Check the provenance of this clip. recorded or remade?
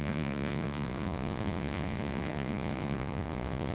remade